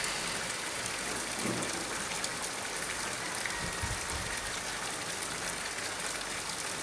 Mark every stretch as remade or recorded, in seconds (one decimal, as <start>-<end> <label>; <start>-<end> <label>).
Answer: 0.0-6.8 recorded